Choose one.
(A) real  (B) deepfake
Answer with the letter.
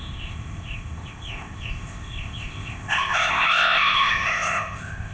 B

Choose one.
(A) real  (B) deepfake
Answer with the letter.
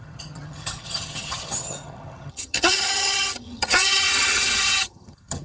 B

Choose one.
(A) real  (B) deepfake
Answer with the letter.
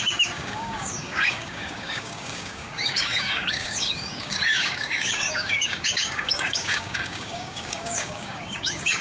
B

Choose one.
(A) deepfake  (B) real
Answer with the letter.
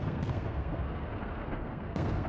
A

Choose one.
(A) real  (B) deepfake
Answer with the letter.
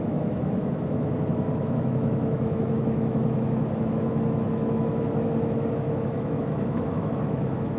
B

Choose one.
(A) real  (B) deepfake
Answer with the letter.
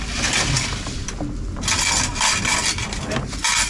A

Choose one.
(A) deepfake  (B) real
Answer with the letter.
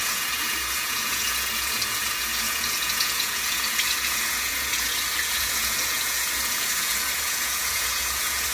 A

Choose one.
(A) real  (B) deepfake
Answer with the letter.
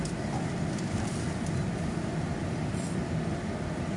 A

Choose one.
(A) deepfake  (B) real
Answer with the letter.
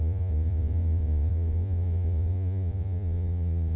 A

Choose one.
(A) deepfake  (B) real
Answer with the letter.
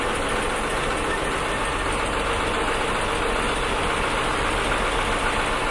B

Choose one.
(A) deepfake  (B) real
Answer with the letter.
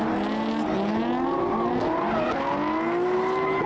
B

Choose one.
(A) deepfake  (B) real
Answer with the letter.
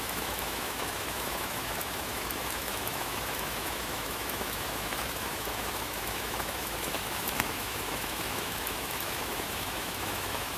A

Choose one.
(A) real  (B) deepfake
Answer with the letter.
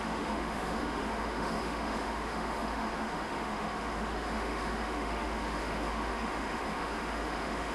B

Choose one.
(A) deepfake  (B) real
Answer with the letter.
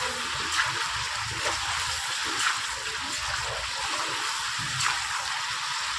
B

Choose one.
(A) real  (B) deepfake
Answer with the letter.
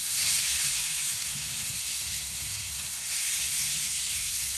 B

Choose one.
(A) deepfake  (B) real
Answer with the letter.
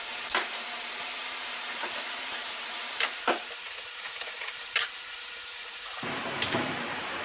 A